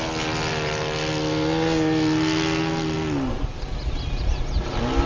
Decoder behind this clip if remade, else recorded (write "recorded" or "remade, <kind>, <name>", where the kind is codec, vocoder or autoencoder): recorded